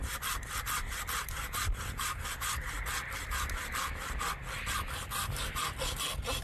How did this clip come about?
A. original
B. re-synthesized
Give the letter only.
A